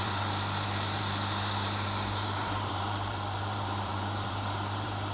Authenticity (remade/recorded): remade